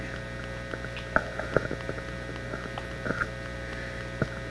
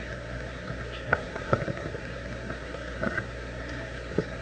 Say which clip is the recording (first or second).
first